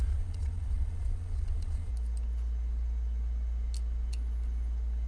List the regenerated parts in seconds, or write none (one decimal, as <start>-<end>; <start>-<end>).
0.0-1.9